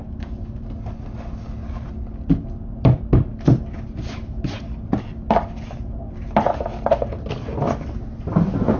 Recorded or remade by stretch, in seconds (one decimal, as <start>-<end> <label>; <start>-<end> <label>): 0.0-8.8 recorded